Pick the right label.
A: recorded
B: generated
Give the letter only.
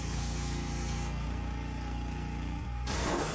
B